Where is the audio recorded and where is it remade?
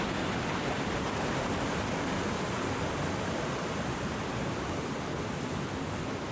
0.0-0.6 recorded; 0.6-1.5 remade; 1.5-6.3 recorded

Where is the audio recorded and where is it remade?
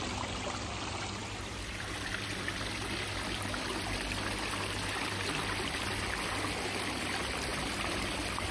0.0-1.2 recorded; 1.2-5.9 remade; 5.9-7.5 recorded; 7.5-8.5 remade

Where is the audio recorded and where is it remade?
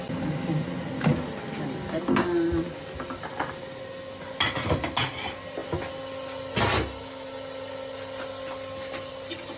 0.0-9.6 recorded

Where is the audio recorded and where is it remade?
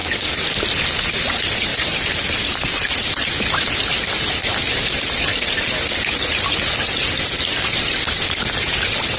0.0-9.2 recorded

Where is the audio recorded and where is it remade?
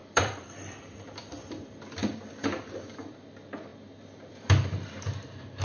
0.0-1.2 remade; 1.2-2.0 recorded; 2.0-3.1 remade; 3.1-5.6 recorded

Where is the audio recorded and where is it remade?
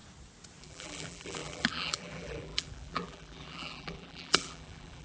0.0-0.6 recorded; 0.6-5.0 remade